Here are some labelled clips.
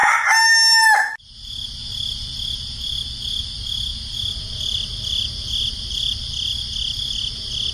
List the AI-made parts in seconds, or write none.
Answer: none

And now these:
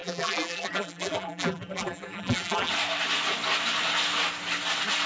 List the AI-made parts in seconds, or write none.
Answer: 0.0-2.7 (vocoder, BigVGAN v2)